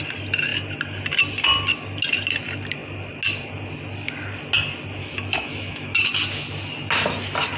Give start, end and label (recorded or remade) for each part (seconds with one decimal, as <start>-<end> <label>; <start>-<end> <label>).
0.0-5.0 recorded; 5.0-6.0 remade; 6.0-7.6 recorded